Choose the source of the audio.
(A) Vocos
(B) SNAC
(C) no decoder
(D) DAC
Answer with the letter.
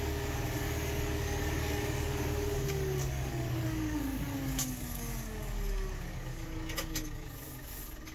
D